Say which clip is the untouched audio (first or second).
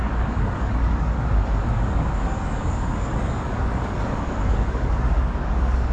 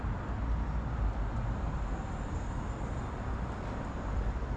second